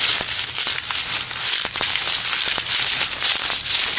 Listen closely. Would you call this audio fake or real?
real